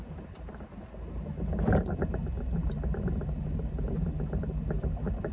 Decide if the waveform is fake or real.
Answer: real